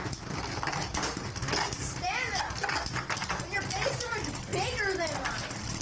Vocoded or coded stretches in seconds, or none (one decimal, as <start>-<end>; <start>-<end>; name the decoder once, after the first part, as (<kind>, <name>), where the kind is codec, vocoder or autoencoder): none